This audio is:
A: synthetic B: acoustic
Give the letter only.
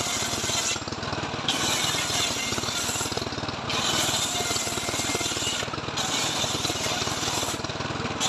B